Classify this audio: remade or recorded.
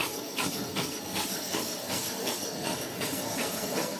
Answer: remade